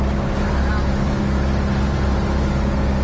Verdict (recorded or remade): recorded